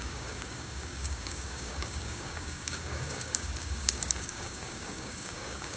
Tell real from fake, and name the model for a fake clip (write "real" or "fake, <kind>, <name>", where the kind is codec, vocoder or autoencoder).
fake, codec, DAC